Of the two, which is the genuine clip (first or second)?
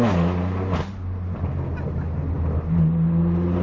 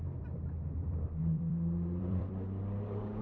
first